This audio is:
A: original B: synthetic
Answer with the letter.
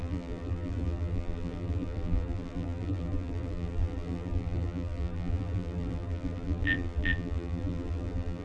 B